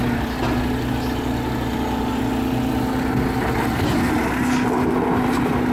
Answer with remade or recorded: recorded